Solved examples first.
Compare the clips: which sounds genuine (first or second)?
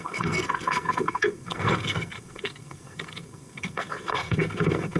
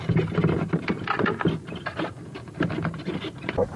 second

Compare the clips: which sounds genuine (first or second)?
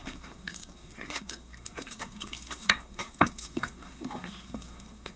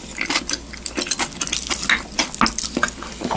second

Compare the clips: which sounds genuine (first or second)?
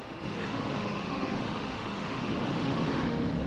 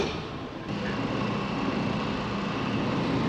second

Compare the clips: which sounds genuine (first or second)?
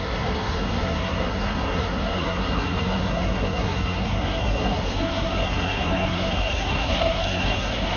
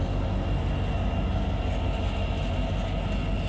second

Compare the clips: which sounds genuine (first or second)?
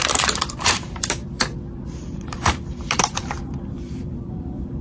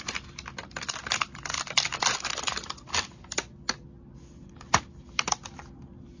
second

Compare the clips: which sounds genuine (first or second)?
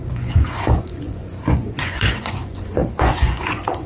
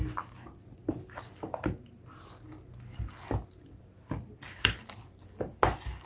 second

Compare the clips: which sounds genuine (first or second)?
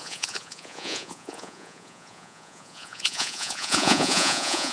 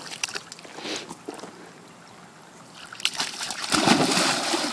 second